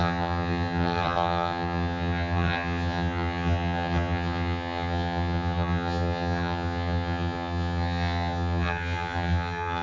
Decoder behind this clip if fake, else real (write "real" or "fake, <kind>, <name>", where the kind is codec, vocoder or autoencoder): fake, vocoder, HiFi-GAN